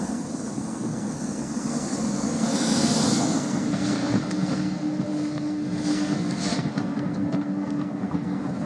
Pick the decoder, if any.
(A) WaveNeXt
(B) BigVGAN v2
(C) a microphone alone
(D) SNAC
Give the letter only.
D